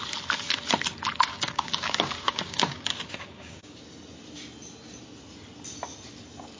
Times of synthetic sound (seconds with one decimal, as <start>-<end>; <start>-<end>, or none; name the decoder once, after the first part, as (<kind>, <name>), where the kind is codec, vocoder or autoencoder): 1.3-3.8 (codec, DAC)